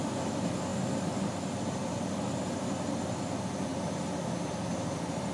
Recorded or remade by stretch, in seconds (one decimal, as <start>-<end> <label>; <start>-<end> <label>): 0.0-5.3 recorded

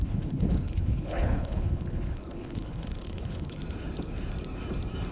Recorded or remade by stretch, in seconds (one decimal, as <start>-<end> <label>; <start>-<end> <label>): 0.0-3.6 remade; 3.6-5.1 recorded

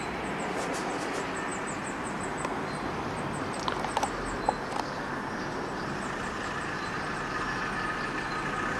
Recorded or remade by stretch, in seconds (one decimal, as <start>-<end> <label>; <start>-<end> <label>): 0.0-8.8 recorded

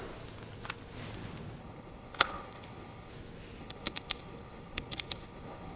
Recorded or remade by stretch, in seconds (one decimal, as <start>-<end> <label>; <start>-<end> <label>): 0.0-1.6 recorded; 1.6-3.1 remade; 3.1-3.6 recorded; 3.6-5.8 remade

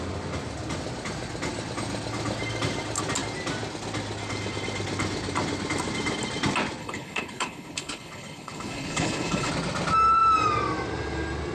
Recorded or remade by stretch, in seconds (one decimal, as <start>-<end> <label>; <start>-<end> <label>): 0.0-6.8 recorded; 6.8-9.5 remade; 9.5-11.5 recorded

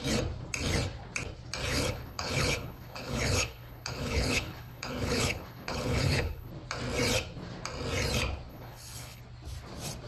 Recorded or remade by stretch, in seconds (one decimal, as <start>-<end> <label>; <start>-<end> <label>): 0.0-1.7 recorded; 1.7-6.5 remade; 6.5-8.5 recorded; 8.5-9.2 remade; 9.2-10.1 recorded